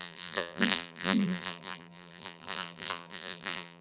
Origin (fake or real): fake